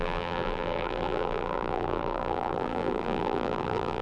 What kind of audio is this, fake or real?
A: fake